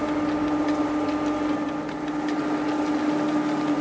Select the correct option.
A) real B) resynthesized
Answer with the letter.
A